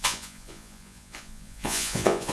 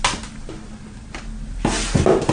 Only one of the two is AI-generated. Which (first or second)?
first